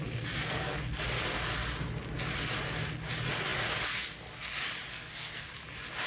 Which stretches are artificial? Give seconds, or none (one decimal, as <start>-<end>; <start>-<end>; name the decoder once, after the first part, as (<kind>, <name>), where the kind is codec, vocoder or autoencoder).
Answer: 0.0-0.8 (codec, SNAC); 4.9-5.5